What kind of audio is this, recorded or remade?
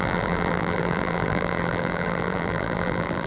remade